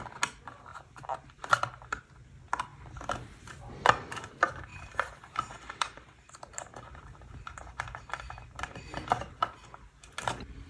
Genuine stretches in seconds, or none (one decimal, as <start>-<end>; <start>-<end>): 0.0-0.7; 1.5-4.7; 8.8-10.7